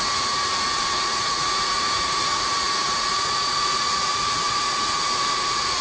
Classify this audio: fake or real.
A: fake